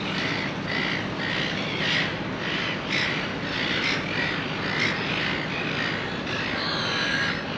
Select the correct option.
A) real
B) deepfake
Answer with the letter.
A